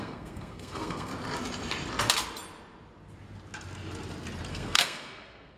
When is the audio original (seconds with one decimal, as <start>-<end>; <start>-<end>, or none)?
1.1-4.5